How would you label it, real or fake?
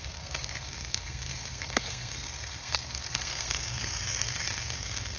fake